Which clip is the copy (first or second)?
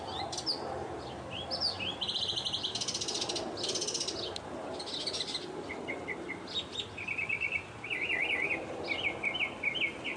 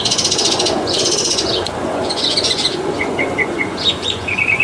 second